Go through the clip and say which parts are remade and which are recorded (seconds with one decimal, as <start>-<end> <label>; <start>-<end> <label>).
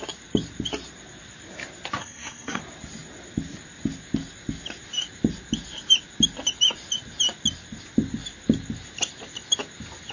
0.0-2.0 recorded; 2.0-2.6 remade; 2.6-10.1 recorded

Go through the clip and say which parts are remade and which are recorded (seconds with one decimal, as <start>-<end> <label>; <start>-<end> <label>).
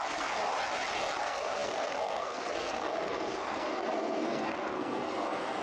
0.0-0.4 remade; 0.4-1.2 recorded; 1.2-5.6 remade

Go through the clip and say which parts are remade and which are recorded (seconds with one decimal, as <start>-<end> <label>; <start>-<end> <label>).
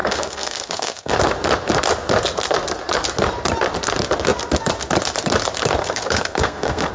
0.0-1.2 remade; 1.2-5.8 recorded; 5.8-6.9 remade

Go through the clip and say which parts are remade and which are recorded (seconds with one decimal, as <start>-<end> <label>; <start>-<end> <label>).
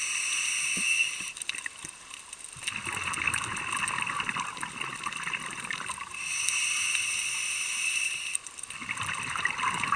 0.0-10.0 recorded